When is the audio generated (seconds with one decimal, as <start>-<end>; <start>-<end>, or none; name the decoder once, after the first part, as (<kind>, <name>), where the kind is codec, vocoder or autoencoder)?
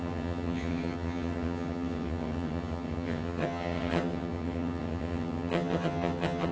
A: 0.0-6.5 (vocoder, HiFi-GAN)